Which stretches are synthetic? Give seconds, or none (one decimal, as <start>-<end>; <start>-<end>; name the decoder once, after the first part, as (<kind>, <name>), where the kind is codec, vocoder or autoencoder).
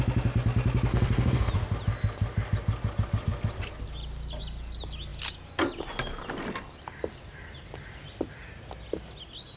0.9-1.5 (codec, DAC)